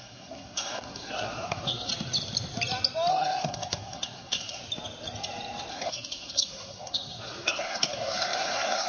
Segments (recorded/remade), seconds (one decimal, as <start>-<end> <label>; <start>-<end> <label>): 0.0-1.9 remade; 1.9-3.1 recorded; 3.1-4.6 remade; 4.6-5.7 recorded; 5.7-8.9 remade